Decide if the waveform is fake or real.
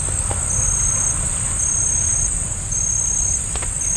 real